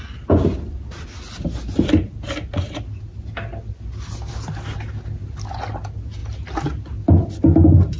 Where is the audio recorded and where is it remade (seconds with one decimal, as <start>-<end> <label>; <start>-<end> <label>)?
0.0-8.0 recorded